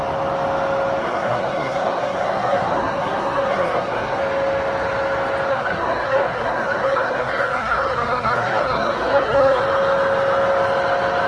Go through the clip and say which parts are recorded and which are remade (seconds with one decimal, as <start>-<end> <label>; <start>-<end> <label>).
0.0-1.0 recorded; 1.0-4.2 remade; 4.2-5.5 recorded; 5.5-9.6 remade; 9.6-11.3 recorded